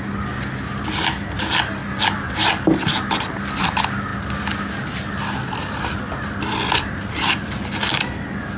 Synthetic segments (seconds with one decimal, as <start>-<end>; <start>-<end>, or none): none